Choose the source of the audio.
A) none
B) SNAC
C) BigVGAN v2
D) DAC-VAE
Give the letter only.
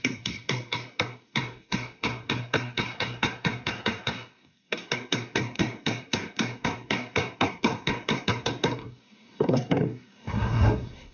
B